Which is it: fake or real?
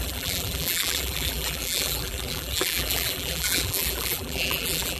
fake